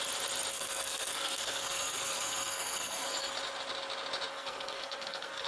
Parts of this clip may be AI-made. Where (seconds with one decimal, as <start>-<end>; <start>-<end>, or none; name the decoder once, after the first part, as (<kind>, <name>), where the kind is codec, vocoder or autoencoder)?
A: 0.5-3.3 (codec, SNAC); 4.3-5.5